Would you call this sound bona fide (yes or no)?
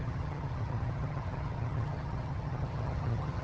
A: no